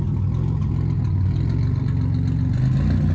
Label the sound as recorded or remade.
recorded